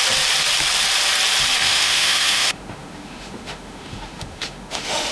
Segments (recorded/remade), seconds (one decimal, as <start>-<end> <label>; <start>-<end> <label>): 0.0-1.6 recorded; 1.6-5.1 remade